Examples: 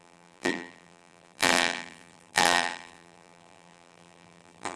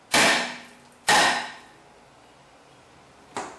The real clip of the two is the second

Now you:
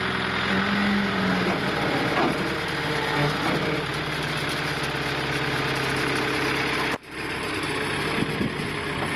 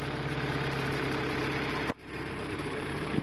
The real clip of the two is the first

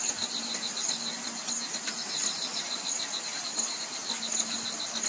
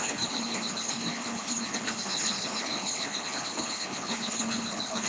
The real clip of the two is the first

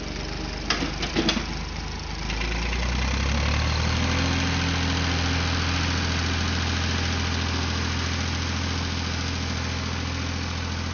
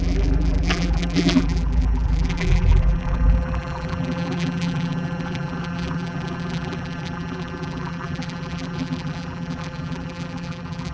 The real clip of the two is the first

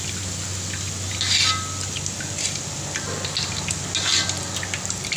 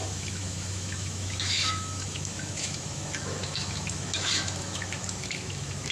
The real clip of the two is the first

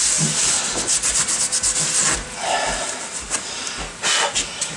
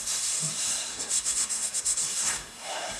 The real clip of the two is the first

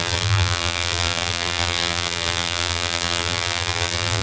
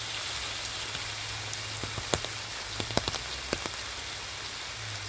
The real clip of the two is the second